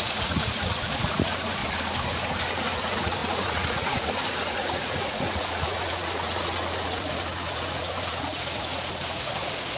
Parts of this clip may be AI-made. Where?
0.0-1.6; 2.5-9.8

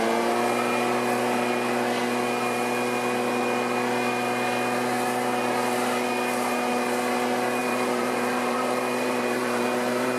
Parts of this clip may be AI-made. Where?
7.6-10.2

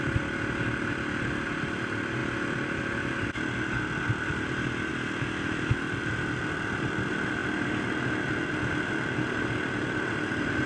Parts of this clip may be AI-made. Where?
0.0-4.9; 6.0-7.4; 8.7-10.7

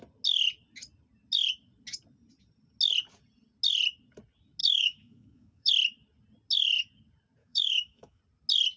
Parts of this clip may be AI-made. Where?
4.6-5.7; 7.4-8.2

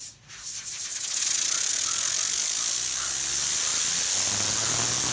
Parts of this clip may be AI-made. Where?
none